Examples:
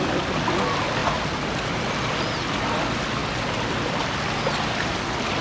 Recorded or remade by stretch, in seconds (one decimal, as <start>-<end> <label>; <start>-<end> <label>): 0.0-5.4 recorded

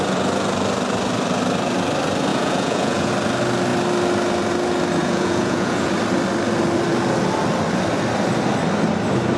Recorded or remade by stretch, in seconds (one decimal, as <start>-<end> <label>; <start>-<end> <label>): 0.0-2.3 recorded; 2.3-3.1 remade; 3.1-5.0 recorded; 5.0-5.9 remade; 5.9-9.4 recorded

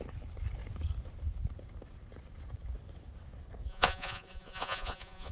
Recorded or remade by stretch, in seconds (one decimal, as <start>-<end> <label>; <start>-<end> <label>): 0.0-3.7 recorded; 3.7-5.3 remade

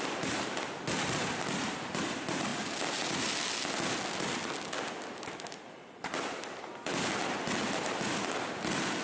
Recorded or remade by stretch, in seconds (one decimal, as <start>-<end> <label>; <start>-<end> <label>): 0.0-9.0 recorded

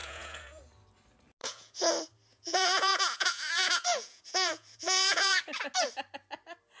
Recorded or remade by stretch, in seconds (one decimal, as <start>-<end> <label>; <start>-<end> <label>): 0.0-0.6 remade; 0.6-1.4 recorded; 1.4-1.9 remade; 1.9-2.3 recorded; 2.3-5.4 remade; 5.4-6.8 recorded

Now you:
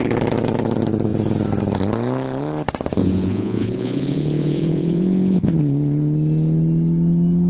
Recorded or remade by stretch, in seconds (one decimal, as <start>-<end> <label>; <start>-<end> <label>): 0.0-3.0 recorded; 3.0-5.5 remade; 5.5-7.5 recorded

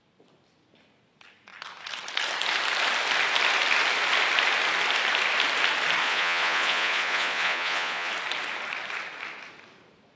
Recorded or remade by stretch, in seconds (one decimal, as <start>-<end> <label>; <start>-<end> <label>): 0.0-6.0 recorded; 6.0-8.1 remade; 8.1-10.2 recorded